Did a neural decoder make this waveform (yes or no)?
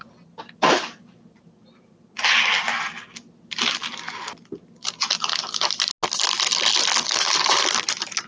no